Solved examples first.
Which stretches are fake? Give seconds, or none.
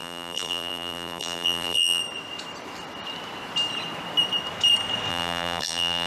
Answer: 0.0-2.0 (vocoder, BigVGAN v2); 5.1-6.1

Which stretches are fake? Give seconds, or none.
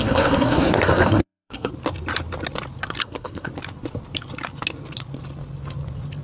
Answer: 0.0-1.7 (codec, SNAC); 3.0-3.5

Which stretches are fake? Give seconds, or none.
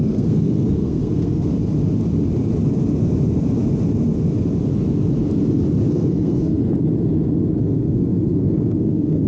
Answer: 0.0-1.5 (codec, SNAC); 5.9-6.6; 7.6-9.3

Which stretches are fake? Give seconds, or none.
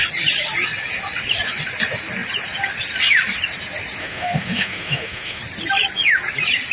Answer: 4.0-5.4 (autoencoder, DAC-VAE)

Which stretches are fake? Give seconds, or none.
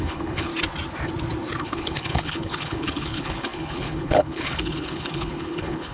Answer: 0.0-0.5 (codec, HILCodec); 1.6-5.9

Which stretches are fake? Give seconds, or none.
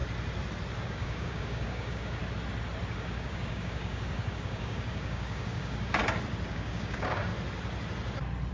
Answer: 0.8-2.2 (codec, DAC); 2.9-6.0; 6.5-7.3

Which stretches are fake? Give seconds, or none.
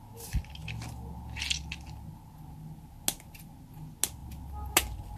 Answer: none